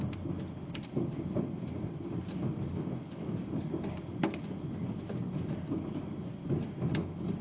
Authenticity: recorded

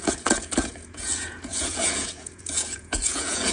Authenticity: remade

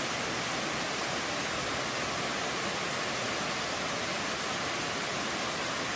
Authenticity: recorded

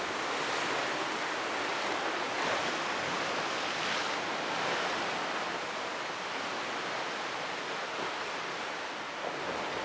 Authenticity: recorded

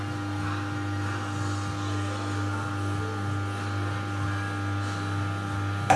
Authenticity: recorded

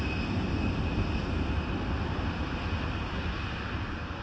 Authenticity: recorded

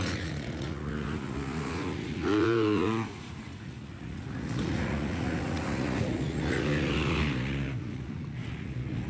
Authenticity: remade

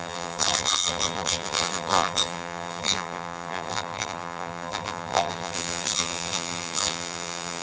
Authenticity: remade